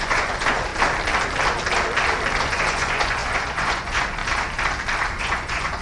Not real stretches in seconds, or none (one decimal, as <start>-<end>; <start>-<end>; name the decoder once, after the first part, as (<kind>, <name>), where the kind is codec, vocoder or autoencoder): 0.0-0.7 (vocoder, Vocos); 2.5-4.2; 5.2-5.8